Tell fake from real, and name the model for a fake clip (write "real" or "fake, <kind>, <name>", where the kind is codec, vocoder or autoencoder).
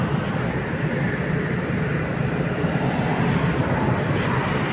real